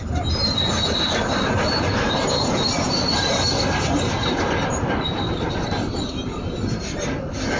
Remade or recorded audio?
recorded